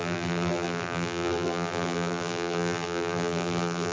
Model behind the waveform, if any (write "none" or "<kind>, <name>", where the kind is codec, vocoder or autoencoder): vocoder, BigVGAN v2